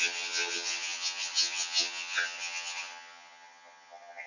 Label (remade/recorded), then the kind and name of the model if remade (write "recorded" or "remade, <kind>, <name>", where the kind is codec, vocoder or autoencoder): remade, vocoder, HiFi-GAN